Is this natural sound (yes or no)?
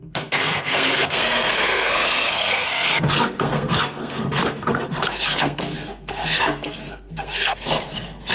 no